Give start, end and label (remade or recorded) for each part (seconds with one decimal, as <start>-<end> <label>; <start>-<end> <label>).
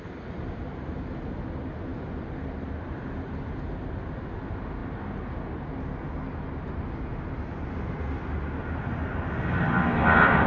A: 0.0-10.5 recorded